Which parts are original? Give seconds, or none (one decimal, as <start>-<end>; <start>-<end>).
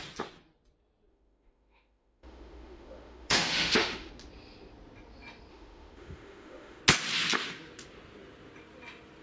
0.0-1.1; 4.1-5.5; 6.8-9.2